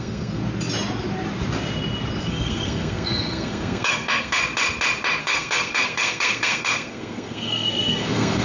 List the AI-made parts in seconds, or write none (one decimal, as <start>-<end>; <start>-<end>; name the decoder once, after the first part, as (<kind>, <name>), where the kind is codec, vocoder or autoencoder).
0.0-0.4 (codec, SNAC); 2.2-4.4; 5.2-8.4